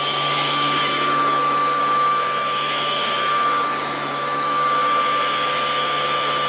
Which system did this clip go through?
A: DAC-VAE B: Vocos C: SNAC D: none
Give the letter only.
A